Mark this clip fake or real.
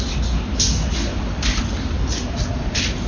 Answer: real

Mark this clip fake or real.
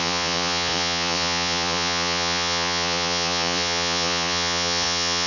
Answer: fake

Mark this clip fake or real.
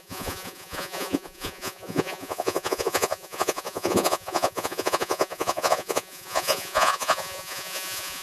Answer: fake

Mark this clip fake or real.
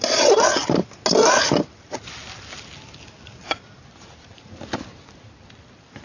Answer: real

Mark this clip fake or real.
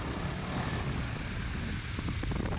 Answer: real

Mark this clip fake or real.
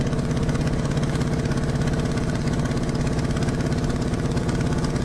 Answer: fake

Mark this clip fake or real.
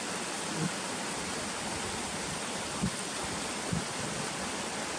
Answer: real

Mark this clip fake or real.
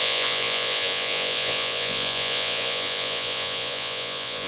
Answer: fake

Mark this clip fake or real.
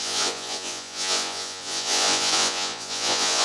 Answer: fake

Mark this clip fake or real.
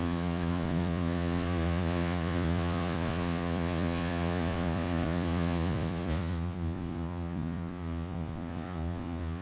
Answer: fake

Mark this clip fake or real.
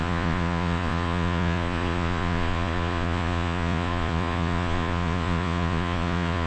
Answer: fake